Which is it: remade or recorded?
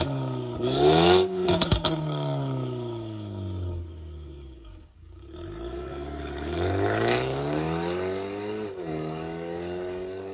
remade